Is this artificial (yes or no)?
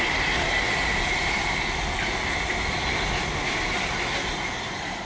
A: no